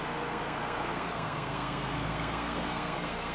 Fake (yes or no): yes